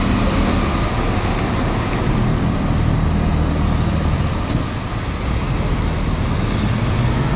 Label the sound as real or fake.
real